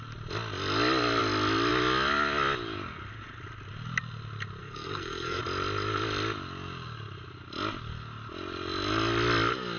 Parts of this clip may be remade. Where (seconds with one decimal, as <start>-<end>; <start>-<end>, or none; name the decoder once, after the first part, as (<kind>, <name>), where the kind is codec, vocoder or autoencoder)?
4.6-5.4 (codec, SNAC)